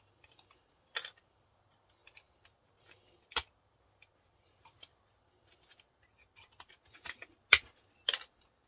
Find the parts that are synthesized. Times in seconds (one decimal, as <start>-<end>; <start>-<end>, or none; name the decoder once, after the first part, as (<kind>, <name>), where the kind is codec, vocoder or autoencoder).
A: none